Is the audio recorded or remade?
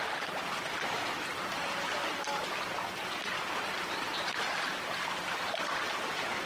remade